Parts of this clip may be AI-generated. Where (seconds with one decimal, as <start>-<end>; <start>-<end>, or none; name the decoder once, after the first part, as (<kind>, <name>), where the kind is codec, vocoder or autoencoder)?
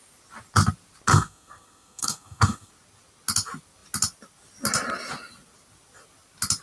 1.1-2.7 (codec, SNAC)